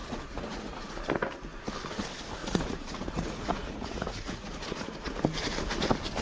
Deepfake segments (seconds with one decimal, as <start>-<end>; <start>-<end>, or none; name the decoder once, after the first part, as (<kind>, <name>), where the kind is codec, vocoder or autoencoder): 0.0-1.0 (vocoder, Vocos); 2.4-5.1